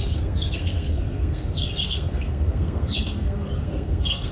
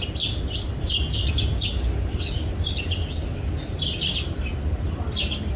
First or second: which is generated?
first